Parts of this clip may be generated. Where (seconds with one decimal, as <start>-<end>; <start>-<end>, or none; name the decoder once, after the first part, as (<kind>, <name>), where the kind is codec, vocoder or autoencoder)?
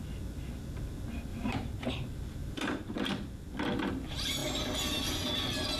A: 1.3-1.9 (vocoder, BigVGAN v2); 2.4-3.3